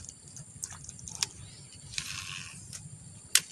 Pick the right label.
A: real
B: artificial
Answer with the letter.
A